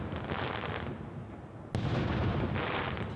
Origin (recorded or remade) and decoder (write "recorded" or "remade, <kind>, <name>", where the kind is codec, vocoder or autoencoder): recorded